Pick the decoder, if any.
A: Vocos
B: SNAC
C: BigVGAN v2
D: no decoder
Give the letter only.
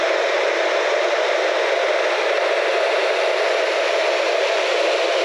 D